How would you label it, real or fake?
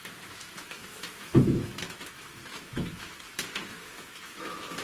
fake